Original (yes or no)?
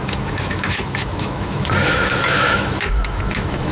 no